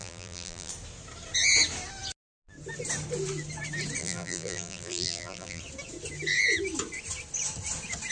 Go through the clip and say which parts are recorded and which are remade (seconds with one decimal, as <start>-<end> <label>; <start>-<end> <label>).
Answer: 0.0-0.7 remade; 0.7-4.0 recorded; 4.0-5.6 remade; 5.6-8.1 recorded